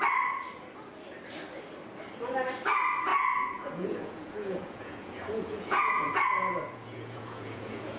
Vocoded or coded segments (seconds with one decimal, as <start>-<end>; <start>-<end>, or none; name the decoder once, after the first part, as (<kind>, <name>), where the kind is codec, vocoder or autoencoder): 3.1-8.0 (vocoder, Vocos)